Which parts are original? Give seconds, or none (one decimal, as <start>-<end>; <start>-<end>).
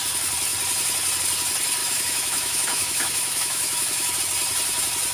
0.0-1.8; 4.2-5.1